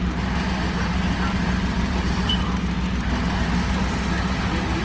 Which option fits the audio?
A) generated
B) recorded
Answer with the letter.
B